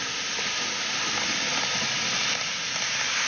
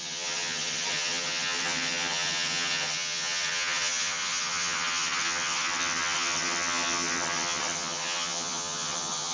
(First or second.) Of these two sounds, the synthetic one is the second